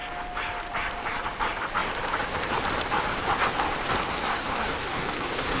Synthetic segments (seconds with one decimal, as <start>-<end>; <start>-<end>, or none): 4.1-5.6